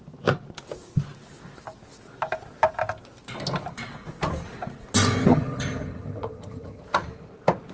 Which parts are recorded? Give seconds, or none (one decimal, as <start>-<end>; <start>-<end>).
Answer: 0.0-5.2; 6.8-7.7